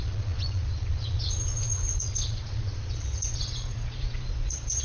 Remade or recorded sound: remade